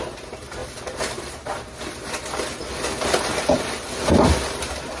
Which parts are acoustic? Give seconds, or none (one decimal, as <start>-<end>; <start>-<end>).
0.0-5.0